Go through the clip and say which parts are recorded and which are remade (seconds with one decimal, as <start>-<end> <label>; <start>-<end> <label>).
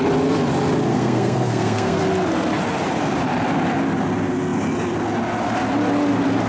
0.0-0.9 recorded; 0.9-2.0 remade; 2.0-6.5 recorded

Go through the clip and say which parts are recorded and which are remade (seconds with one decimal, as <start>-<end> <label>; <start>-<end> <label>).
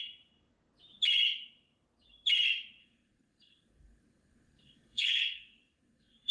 0.0-2.8 recorded; 2.8-6.3 remade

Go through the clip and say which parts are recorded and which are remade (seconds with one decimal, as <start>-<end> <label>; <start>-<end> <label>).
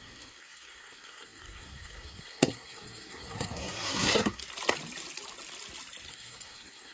0.0-4.4 remade; 4.4-6.1 recorded; 6.1-6.9 remade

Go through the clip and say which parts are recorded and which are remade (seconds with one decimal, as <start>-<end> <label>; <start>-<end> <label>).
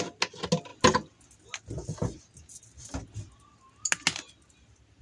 0.0-5.0 recorded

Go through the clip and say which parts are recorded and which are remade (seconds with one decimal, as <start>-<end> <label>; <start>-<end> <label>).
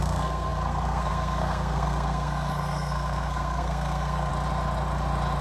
0.0-4.3 remade; 4.3-5.4 recorded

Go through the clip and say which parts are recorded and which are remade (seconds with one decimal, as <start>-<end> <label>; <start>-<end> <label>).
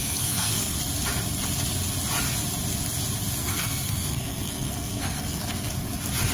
0.0-0.8 remade; 0.8-3.4 recorded; 3.4-5.7 remade; 5.7-6.3 recorded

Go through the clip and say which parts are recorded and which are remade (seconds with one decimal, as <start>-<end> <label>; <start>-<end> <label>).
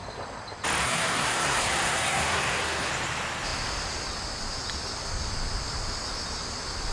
0.0-0.8 recorded; 0.8-2.9 remade; 2.9-6.9 recorded